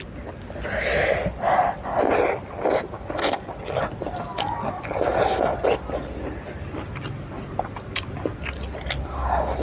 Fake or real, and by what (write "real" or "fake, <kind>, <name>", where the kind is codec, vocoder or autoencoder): real